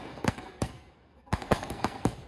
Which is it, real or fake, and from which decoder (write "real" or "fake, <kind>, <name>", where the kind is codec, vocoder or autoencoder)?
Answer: fake, codec, SNAC